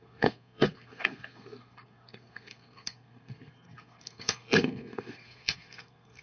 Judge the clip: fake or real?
fake